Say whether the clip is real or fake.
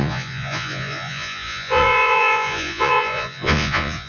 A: fake